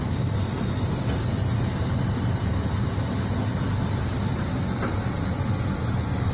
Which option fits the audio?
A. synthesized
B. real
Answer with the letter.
B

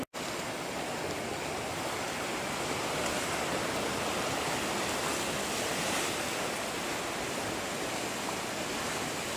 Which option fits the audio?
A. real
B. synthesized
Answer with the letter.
A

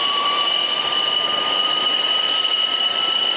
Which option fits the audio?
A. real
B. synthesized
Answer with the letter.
B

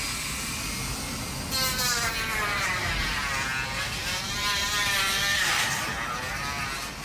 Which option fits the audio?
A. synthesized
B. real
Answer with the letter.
A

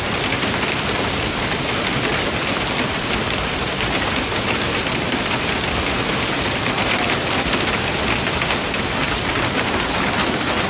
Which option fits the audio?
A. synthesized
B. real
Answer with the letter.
A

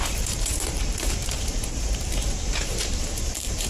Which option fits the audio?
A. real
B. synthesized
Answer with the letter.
B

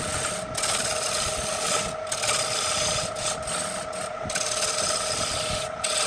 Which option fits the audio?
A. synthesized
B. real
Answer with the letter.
B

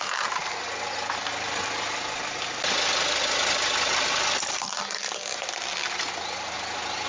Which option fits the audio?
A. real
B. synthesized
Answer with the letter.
A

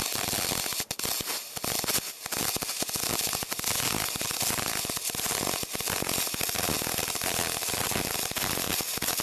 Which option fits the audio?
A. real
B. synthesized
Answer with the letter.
A